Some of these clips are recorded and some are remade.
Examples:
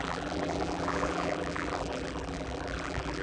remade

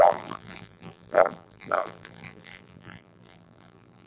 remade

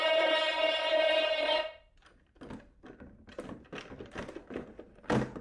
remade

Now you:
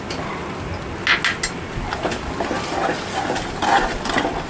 recorded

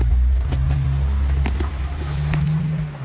recorded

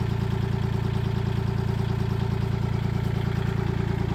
recorded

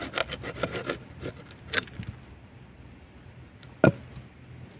recorded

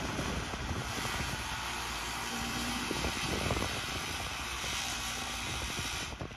remade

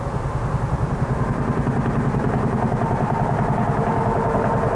recorded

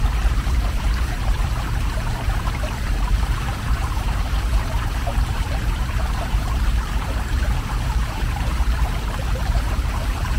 remade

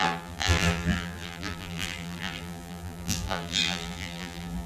remade